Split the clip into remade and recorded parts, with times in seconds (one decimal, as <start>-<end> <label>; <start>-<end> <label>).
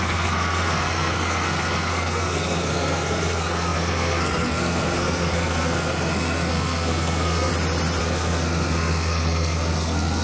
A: 0.0-7.5 remade; 7.5-8.0 recorded; 8.0-10.2 remade